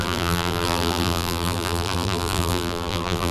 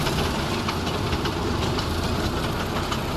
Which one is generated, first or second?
first